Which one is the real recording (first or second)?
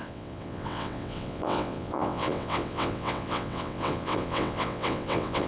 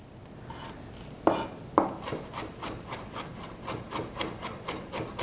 second